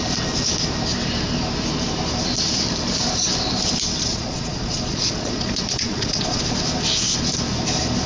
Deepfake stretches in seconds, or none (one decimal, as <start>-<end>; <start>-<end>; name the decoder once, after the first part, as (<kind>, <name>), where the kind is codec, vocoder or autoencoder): 4.1-6.4 (vocoder, Vocos)